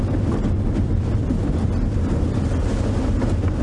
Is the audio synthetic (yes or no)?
no